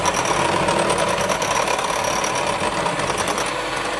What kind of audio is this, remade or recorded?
recorded